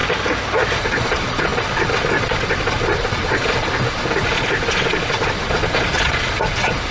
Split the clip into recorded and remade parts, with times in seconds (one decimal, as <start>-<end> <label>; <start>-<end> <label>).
0.0-0.8 recorded; 0.8-6.9 remade